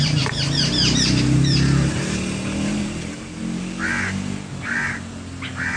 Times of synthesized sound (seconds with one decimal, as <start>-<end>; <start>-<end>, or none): 0.0-3.4